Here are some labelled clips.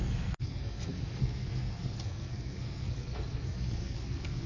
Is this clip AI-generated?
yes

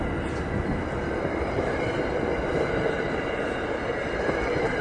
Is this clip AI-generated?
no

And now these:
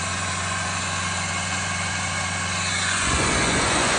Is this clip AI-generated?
yes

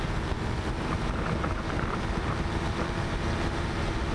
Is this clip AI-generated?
yes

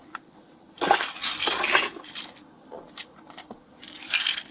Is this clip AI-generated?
no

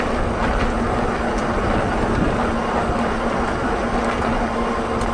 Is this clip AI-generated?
no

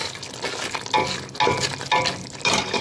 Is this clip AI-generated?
no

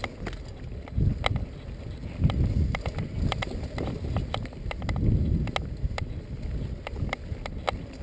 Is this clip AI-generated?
no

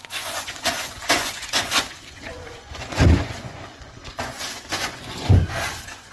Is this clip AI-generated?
yes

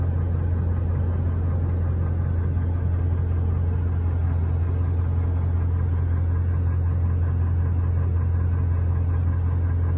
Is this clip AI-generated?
no